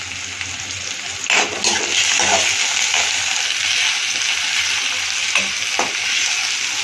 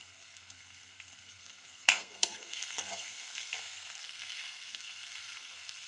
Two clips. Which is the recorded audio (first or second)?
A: first